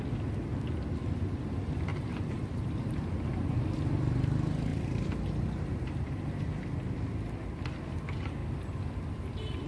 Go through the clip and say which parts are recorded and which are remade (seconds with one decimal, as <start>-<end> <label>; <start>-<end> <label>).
0.0-1.9 recorded; 1.9-3.4 remade; 3.4-4.7 recorded; 4.7-6.3 remade; 6.3-9.7 recorded